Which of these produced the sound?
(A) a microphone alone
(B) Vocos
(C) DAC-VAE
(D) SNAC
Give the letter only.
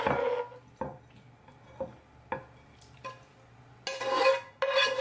A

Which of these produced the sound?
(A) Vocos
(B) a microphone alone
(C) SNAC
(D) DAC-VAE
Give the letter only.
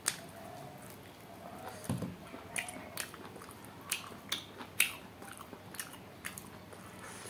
B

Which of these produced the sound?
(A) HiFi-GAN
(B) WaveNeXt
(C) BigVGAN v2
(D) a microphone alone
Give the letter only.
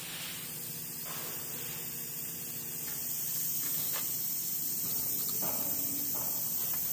D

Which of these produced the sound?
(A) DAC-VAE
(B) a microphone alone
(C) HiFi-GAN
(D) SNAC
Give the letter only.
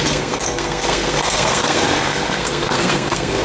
D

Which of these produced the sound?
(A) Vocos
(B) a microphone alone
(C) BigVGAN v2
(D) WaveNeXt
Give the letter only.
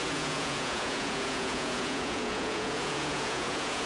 A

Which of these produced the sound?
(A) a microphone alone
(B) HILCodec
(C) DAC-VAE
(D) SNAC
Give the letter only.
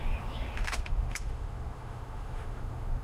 C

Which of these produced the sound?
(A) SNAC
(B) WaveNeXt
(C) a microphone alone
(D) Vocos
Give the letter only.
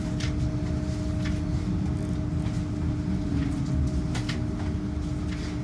C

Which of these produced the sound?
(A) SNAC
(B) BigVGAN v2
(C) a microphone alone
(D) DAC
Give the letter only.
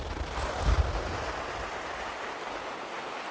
C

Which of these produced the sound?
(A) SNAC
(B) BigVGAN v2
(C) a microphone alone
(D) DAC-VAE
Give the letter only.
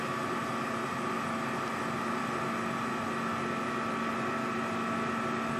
C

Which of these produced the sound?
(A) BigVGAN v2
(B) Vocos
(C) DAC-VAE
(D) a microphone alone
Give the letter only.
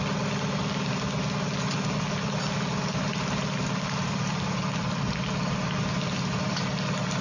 D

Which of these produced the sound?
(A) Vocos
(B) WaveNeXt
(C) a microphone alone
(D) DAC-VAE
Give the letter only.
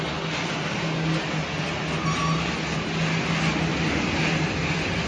C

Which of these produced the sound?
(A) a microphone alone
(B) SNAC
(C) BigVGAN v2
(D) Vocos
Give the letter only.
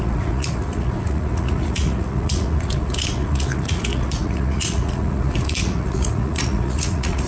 D